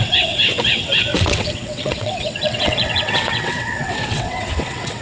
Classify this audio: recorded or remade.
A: remade